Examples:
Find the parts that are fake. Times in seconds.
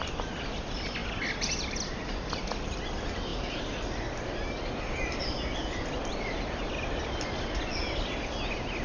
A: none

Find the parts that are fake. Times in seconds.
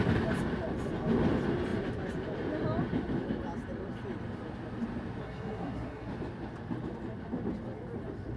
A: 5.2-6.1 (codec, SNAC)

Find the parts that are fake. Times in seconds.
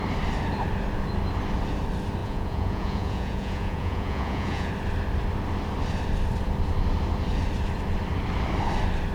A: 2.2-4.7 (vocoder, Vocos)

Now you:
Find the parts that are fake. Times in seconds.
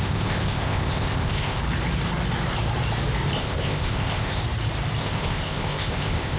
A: 0.0-1.6 (codec, ZipCodec); 3.4-4.4; 5.0-6.4